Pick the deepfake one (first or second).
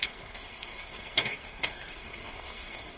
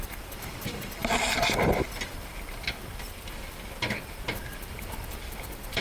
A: first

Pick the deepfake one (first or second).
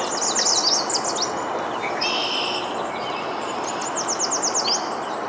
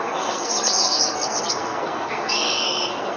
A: second